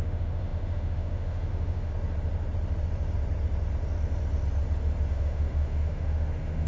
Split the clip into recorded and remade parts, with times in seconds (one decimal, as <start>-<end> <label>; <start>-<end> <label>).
0.0-1.9 remade; 1.9-5.1 recorded; 5.1-6.7 remade